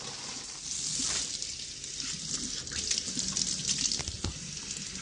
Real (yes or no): yes